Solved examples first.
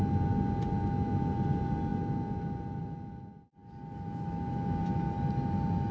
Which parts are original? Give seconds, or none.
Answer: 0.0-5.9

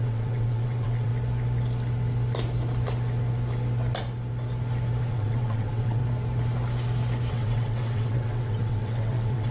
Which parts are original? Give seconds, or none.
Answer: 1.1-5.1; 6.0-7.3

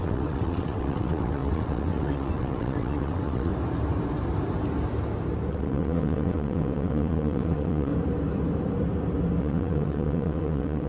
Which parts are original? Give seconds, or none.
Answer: 3.5-5.5; 7.9-9.4

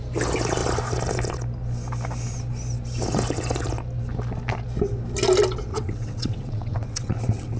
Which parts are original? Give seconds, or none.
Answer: 0.0-5.7

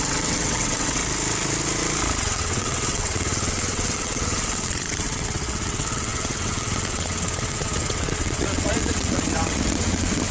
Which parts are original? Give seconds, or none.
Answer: 1.0-2.2

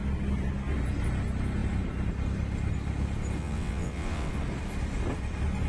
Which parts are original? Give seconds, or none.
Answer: 0.0-3.4; 4.3-5.7

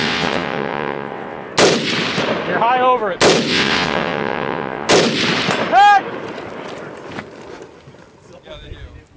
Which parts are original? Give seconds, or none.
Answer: 1.5-3.5; 4.9-9.2